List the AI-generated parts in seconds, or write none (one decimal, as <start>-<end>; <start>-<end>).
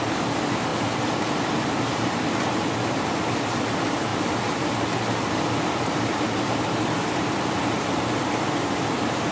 none